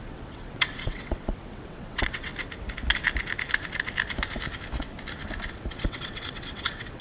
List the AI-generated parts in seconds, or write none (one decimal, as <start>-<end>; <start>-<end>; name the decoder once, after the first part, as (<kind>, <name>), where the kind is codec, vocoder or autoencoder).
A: 0.0-2.3 (vocoder, WaveNeXt); 5.7-7.0